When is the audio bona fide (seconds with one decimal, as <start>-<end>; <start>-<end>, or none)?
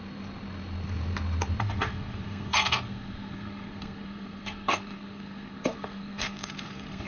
0.0-1.6